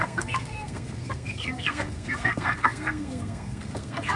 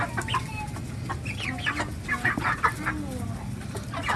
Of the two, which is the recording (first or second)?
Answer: second